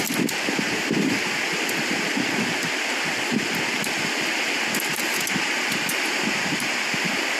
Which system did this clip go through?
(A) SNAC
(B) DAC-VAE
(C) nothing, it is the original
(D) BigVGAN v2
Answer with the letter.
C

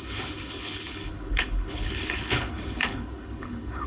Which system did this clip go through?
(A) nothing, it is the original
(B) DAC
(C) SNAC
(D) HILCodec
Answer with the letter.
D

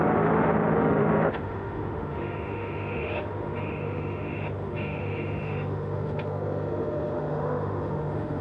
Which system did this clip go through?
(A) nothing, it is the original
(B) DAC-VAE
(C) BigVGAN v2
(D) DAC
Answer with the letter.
B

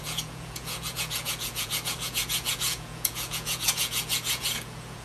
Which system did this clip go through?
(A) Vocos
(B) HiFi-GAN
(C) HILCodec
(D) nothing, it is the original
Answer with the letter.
A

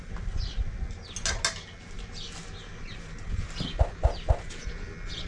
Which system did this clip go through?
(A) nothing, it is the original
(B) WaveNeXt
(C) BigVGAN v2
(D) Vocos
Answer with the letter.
A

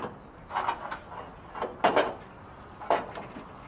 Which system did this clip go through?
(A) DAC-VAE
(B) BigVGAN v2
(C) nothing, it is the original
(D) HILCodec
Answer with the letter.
C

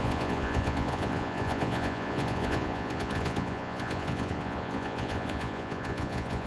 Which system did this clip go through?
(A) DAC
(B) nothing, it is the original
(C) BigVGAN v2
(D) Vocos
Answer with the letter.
D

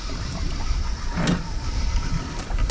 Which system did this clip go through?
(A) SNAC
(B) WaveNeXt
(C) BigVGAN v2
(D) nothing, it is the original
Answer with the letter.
D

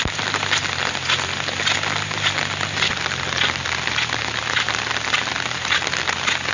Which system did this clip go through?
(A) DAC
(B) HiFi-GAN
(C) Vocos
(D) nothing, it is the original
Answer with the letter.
D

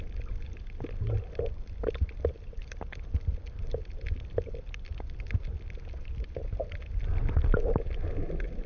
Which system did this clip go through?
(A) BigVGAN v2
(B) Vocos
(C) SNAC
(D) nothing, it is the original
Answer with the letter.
D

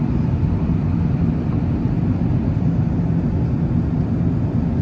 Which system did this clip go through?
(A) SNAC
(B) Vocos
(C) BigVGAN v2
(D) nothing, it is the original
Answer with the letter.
D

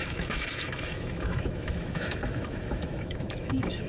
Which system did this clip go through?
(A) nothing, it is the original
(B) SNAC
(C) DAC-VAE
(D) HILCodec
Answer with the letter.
C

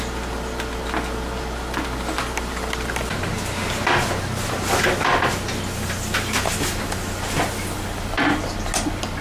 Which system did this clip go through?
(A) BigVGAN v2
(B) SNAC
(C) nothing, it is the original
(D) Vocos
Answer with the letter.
C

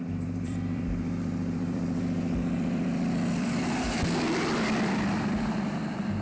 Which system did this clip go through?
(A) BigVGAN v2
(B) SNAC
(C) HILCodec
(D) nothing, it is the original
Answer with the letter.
A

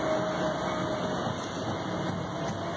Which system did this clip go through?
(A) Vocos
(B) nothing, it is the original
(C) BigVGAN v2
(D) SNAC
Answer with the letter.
B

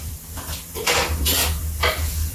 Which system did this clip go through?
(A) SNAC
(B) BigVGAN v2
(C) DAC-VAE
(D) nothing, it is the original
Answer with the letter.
B